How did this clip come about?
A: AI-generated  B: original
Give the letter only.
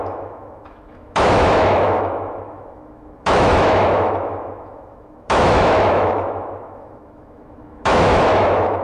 A